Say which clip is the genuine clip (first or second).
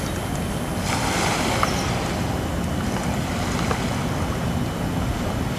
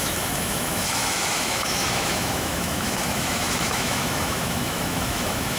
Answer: first